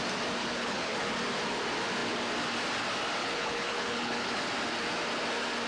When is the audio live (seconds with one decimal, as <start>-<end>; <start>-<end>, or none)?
0.0-0.4; 1.1-3.2; 4.4-5.7